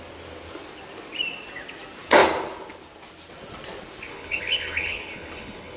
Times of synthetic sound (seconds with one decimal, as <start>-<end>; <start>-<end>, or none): 4.1-5.8